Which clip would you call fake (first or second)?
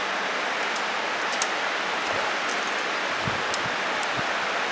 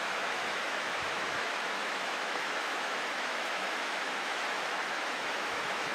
second